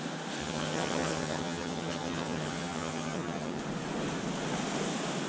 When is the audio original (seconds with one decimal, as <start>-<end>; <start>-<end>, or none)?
0.0-0.4; 3.6-5.3